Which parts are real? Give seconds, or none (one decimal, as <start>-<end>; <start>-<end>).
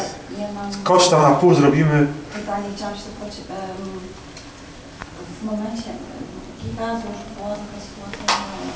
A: 0.0-0.8; 1.7-5.0; 5.5-8.8